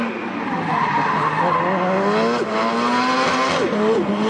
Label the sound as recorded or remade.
recorded